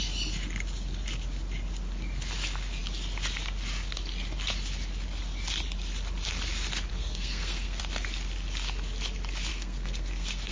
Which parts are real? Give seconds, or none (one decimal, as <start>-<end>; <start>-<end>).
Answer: 0.0-6.9; 7.8-9.5